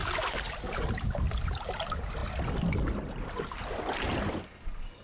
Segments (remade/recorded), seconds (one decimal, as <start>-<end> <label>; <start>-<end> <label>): 0.0-5.0 recorded